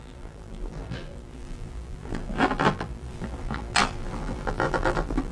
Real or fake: fake